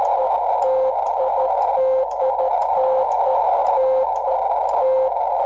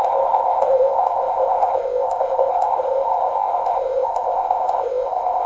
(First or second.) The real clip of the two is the first